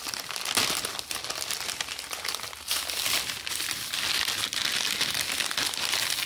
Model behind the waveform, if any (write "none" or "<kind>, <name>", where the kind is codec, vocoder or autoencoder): none